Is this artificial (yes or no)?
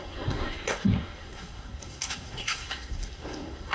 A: yes